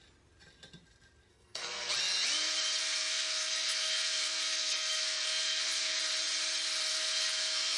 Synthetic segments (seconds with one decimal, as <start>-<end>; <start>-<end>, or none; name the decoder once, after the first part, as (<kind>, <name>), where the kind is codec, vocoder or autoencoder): 1.3-1.9 (codec, SNAC); 2.8-6.0; 6.9-7.8